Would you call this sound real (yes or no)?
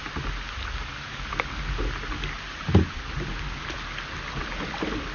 yes